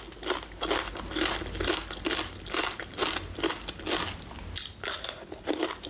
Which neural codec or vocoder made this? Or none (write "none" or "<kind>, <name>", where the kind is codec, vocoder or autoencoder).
none